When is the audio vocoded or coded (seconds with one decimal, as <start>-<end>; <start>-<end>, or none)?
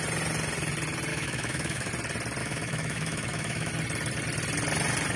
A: 1.1-1.9; 2.4-3.7